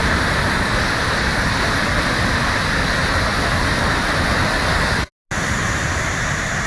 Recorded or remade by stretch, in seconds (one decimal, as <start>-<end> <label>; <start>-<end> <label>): 0.0-2.9 recorded; 2.9-3.3 remade; 3.3-4.0 recorded; 4.0-4.4 remade; 4.4-6.1 recorded; 6.1-6.7 remade